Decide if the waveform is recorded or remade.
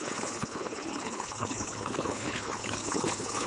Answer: remade